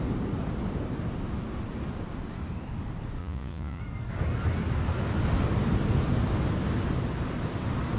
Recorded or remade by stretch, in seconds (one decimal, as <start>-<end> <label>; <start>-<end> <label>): 0.0-3.2 recorded; 3.2-3.8 remade; 3.8-8.0 recorded

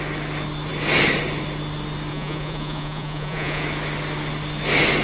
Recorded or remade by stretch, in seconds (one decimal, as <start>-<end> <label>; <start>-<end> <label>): 0.0-2.1 recorded; 2.1-3.6 remade; 3.6-5.0 recorded

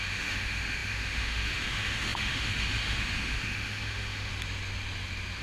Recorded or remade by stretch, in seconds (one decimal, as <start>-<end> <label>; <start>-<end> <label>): 0.0-4.3 remade; 4.3-5.4 recorded

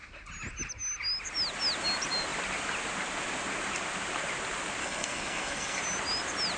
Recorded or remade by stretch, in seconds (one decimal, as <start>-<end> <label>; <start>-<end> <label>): 0.0-4.8 recorded; 4.8-5.8 remade; 5.8-6.6 recorded

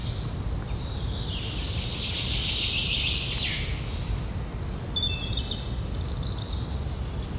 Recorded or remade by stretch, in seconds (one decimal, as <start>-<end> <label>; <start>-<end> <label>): 0.0-7.4 recorded